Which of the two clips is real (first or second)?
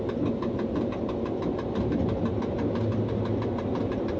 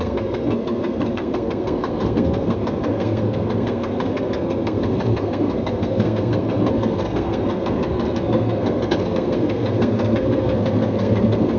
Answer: first